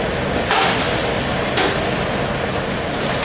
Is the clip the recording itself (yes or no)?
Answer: yes